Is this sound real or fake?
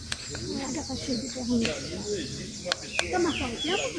real